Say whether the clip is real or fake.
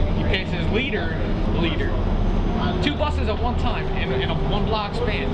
real